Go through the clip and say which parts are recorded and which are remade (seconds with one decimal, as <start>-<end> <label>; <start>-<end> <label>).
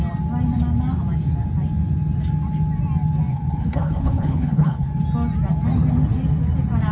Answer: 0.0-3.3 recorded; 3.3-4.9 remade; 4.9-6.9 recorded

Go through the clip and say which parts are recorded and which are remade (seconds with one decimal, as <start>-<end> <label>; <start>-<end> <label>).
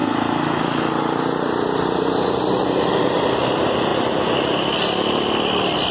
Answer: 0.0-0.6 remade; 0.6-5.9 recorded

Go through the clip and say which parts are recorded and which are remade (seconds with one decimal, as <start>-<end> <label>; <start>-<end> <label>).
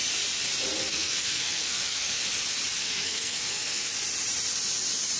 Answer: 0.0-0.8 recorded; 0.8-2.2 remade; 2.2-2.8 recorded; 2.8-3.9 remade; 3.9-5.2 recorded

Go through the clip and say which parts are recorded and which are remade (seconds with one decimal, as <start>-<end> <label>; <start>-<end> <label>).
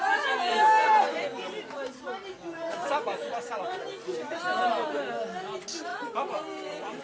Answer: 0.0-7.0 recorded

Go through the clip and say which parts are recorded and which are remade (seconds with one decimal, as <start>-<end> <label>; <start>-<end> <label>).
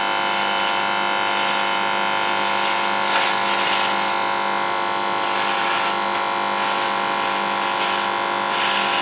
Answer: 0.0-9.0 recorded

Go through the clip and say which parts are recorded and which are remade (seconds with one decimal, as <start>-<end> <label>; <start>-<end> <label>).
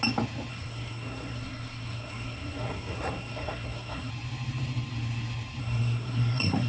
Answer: 0.0-0.5 recorded; 0.5-4.1 remade; 4.1-5.6 recorded; 5.6-6.7 remade